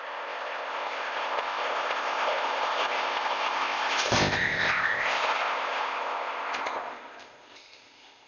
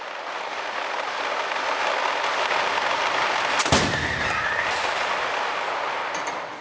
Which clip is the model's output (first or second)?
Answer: first